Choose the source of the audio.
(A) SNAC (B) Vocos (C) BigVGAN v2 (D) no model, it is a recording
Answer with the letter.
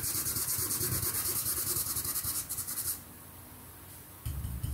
D